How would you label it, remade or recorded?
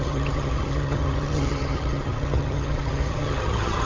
remade